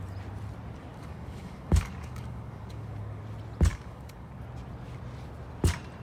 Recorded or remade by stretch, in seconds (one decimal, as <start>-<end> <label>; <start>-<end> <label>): 0.0-0.9 recorded; 0.9-3.2 remade; 3.2-3.7 recorded; 3.7-4.4 remade; 4.4-6.0 recorded